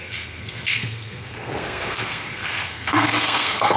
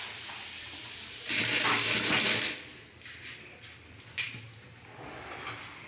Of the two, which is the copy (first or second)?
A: first